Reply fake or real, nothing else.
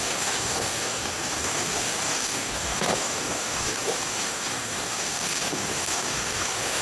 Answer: fake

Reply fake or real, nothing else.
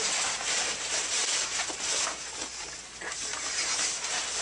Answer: fake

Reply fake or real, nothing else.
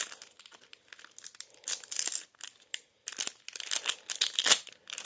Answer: real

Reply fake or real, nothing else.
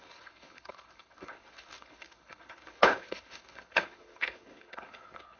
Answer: fake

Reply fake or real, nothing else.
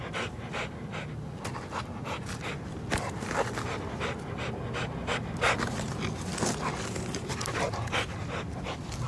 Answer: real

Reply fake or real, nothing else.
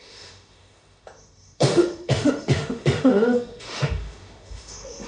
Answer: fake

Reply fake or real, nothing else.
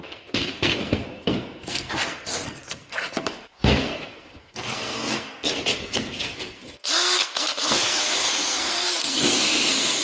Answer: fake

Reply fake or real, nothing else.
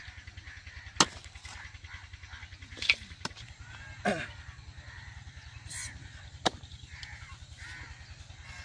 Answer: real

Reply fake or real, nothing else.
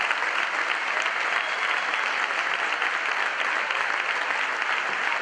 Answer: real